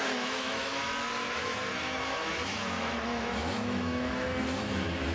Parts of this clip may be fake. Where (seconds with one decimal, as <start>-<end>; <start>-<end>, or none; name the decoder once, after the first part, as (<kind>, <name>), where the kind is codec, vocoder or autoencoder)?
0.0-5.1 (autoencoder, DAC-VAE)

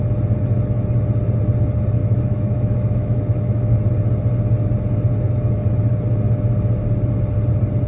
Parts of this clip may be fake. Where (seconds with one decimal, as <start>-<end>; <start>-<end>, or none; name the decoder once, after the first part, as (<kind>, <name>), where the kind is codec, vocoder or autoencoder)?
2.0-3.7 (autoencoder, DAC-VAE)

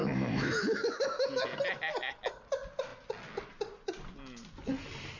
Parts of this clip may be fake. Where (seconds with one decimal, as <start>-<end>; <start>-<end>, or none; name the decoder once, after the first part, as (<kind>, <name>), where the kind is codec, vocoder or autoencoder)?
0.0-1.3 (autoencoder, DAC-VAE)

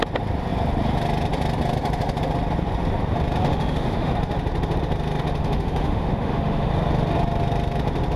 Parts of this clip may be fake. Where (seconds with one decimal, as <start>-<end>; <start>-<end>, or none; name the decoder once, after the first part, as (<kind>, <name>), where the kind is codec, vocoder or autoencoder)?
3.4-4.1 (autoencoder, DAC-VAE); 5.4-6.7

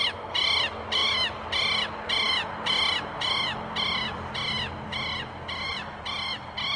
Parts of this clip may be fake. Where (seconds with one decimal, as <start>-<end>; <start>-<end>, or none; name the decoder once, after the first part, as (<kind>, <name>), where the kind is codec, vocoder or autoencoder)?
none

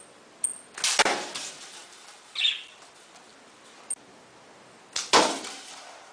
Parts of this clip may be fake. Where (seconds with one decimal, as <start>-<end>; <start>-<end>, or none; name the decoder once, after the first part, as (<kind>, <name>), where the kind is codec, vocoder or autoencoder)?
none

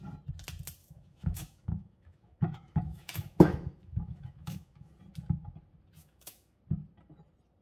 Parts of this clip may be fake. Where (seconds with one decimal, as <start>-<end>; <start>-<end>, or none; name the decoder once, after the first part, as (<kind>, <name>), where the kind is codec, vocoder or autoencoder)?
0.8-4.9 (autoencoder, DAC-VAE); 6.0-6.6